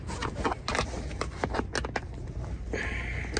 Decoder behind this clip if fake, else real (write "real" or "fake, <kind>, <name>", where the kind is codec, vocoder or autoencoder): real